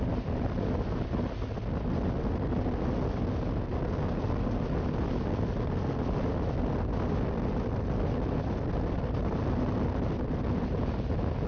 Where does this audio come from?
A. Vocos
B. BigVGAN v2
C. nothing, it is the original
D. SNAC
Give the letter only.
C